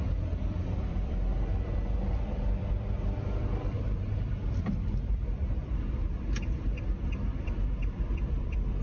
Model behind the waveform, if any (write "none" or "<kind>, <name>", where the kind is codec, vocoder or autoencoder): vocoder, BigVGAN v2